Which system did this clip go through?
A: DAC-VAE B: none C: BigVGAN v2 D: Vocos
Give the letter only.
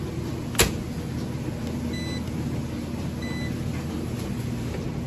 B